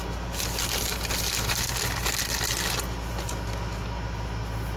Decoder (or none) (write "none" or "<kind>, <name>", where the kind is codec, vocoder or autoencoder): none